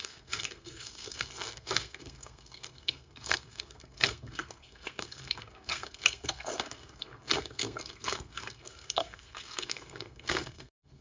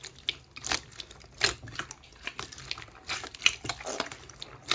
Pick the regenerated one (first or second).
first